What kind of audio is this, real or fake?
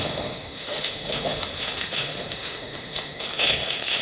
fake